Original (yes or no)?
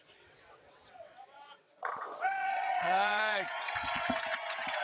no